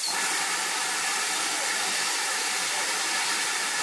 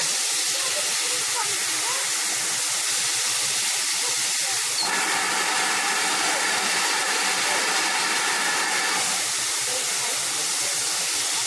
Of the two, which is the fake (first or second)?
first